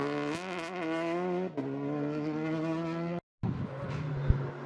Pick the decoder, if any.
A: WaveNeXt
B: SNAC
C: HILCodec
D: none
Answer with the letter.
D